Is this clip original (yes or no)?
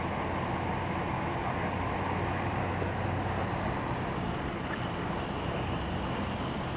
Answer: yes